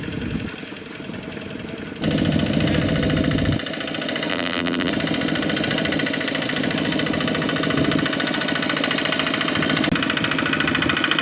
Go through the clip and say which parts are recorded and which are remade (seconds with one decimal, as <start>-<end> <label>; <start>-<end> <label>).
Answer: 0.0-4.3 recorded; 4.3-4.9 remade; 4.9-11.2 recorded